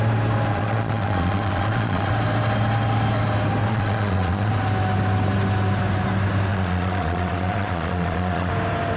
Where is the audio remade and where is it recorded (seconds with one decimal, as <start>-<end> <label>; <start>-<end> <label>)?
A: 0.0-0.5 recorded; 0.5-2.1 remade; 2.1-3.7 recorded; 3.7-4.5 remade; 4.5-6.5 recorded; 6.5-8.5 remade; 8.5-9.0 recorded